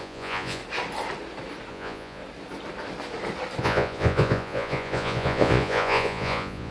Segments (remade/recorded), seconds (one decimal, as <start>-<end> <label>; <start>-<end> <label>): 0.0-0.6 remade; 0.6-1.7 recorded; 1.7-2.2 remade; 2.2-3.6 recorded; 3.6-6.7 remade